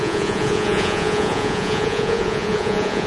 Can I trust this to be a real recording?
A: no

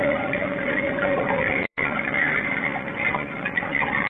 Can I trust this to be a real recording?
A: no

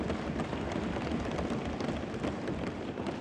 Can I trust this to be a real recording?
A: yes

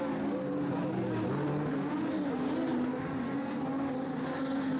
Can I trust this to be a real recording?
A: yes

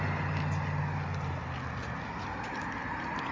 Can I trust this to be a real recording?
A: yes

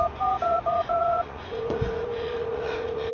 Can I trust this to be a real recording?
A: no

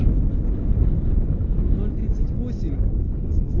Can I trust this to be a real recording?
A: yes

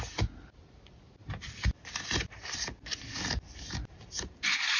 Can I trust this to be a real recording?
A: yes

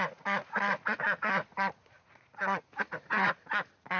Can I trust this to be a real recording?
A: no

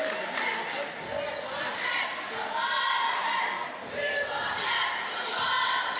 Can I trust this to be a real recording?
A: yes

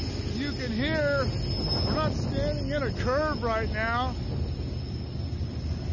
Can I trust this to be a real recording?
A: yes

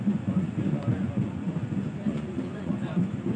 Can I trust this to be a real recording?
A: no